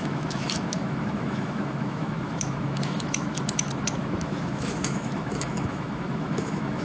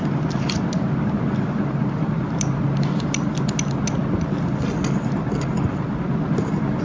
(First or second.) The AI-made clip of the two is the first